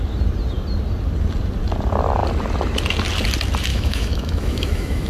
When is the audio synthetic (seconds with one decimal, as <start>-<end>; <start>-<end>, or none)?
3.7-5.1